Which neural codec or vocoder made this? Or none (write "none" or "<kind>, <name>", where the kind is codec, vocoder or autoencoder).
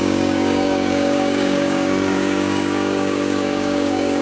codec, DAC